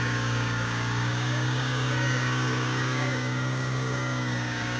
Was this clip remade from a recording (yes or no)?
yes